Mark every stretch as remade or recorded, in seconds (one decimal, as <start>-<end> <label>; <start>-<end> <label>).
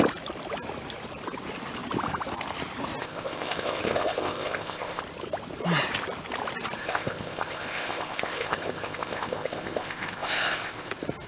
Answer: 0.0-3.0 recorded; 3.0-5.0 remade; 5.0-6.8 recorded; 6.8-10.9 remade; 10.9-11.3 recorded